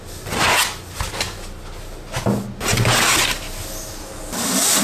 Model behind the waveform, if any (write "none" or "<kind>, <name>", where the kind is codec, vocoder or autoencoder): none